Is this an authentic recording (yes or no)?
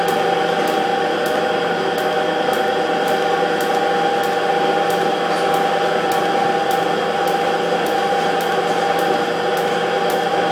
yes